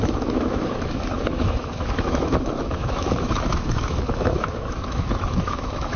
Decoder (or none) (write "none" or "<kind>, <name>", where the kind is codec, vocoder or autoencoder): autoencoder, DAC-VAE